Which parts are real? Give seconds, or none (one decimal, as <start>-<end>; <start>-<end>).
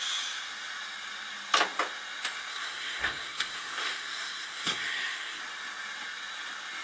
0.0-2.5; 5.4-6.8